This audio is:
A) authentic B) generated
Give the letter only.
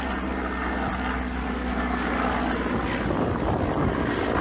A